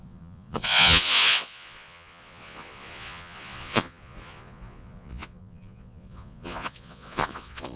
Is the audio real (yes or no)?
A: no